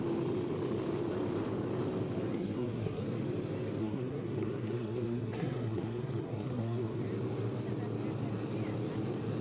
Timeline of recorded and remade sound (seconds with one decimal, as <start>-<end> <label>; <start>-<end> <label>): 0.0-2.3 recorded; 2.3-3.0 remade; 3.0-3.8 recorded; 3.8-7.0 remade; 7.0-9.4 recorded